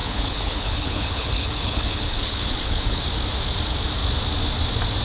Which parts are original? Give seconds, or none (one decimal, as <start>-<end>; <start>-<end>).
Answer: 3.0-5.0